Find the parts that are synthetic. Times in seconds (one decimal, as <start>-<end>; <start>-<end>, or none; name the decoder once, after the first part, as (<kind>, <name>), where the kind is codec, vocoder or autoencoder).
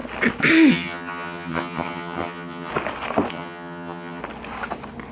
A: 0.7-2.7 (vocoder, HiFi-GAN); 3.3-4.2